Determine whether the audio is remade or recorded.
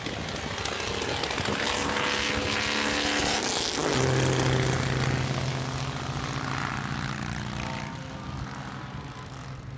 recorded